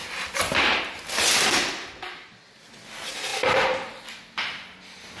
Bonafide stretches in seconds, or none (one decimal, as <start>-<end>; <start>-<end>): 0.0-5.2